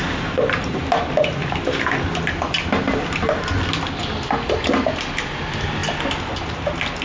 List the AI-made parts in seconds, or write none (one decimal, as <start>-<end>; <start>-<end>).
0.0-0.8